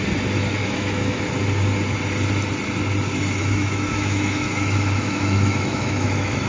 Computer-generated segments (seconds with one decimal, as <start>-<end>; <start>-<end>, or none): 0.6-1.2; 3.4-6.5